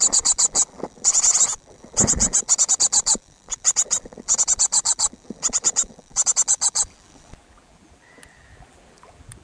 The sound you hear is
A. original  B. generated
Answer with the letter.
B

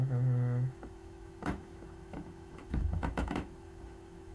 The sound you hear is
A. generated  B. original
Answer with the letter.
A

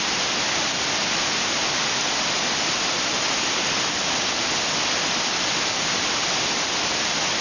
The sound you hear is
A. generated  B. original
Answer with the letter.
B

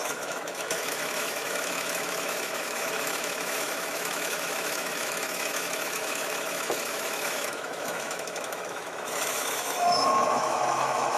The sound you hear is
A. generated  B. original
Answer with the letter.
A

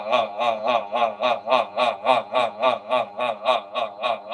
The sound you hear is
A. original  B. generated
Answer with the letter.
B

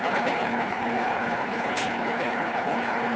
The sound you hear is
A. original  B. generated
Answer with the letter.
B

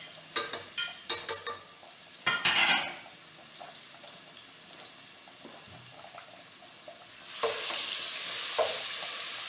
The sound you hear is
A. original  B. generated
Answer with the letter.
A